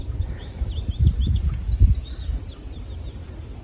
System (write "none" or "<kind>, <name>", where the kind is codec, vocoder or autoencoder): none